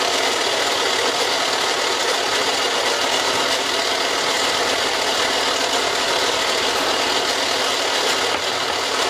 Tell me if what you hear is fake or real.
real